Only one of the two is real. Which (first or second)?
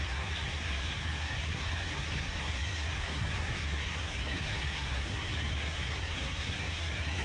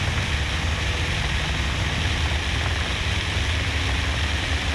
second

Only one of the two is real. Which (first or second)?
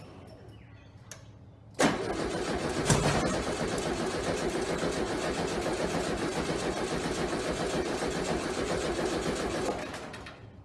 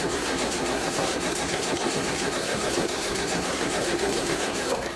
first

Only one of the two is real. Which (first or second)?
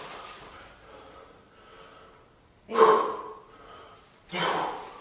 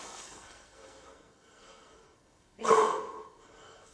first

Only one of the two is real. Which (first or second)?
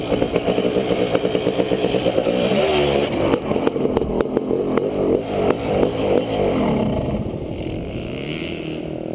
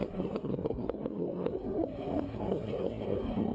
first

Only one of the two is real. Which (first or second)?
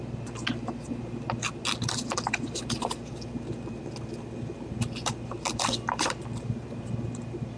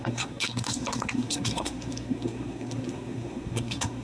first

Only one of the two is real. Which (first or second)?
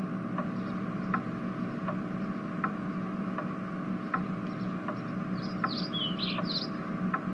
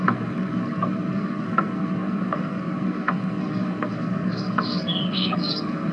first